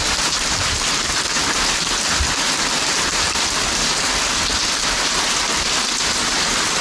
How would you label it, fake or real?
real